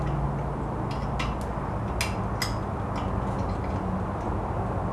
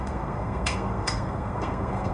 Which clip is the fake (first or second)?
second